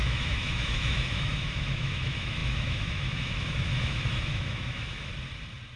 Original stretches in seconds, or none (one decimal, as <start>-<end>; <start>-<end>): 5.1-5.8